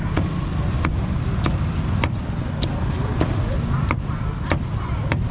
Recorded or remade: recorded